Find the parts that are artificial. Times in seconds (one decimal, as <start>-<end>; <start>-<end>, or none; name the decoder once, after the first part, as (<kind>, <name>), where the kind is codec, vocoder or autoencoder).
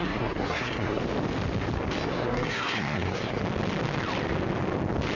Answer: 0.0-1.0 (codec, SNAC); 2.1-3.4